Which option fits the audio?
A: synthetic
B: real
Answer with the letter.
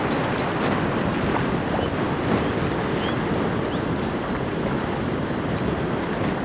B